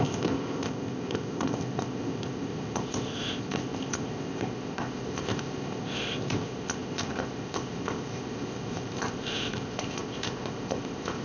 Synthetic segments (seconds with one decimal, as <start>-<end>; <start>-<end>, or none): 0.0-11.2